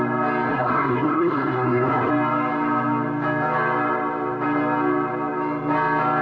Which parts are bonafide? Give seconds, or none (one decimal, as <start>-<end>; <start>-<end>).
0.0-0.5; 2.1-6.2